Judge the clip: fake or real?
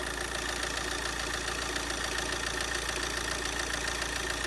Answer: real